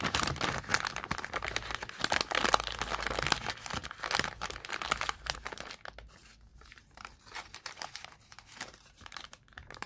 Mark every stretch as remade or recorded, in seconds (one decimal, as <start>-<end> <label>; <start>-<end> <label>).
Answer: 0.0-6.5 recorded; 6.5-9.9 remade

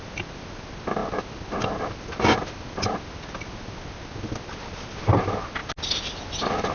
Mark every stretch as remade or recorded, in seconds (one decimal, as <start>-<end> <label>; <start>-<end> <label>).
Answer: 0.0-6.7 recorded

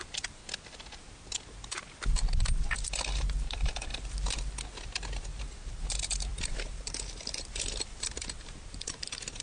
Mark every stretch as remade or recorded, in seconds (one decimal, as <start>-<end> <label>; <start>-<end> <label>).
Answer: 0.0-0.4 remade; 0.4-3.2 recorded; 3.2-3.9 remade; 3.9-5.2 recorded; 5.2-9.4 remade

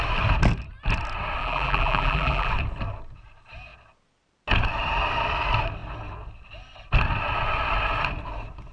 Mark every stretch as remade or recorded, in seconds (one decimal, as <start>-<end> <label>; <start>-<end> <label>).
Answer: 0.0-1.4 recorded; 1.4-2.5 remade; 2.5-8.7 recorded